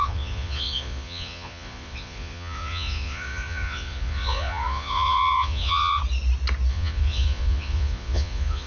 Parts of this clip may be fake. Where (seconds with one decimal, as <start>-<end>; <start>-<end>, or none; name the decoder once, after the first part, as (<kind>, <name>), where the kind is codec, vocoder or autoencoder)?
0.0-6.0 (vocoder, Vocos); 6.7-8.7

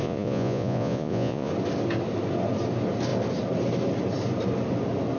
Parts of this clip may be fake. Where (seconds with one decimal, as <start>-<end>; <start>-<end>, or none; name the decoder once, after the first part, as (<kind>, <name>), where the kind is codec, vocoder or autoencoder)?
0.0-1.5 (vocoder, Vocos)

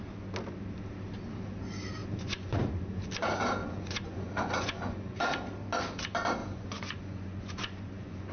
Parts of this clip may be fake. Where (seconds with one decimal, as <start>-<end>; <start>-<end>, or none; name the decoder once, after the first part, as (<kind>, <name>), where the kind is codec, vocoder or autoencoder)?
2.0-2.6 (vocoder, Vocos); 3.6-5.2; 6.4-8.3

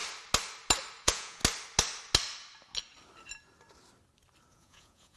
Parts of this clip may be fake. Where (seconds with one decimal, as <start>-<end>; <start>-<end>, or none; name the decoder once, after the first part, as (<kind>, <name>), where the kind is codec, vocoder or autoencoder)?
1.0-1.4 (vocoder, Vocos); 4.5-5.2